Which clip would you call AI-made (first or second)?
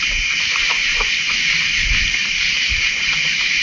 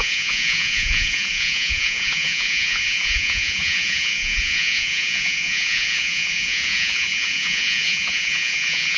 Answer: second